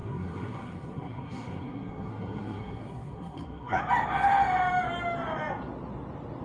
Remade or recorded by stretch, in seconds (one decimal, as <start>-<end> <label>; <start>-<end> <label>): 0.0-3.8 remade; 3.8-6.4 recorded